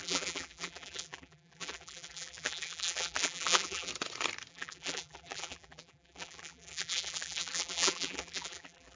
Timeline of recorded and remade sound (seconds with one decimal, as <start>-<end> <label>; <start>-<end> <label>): 0.0-3.9 remade; 3.9-4.5 recorded; 4.5-9.0 remade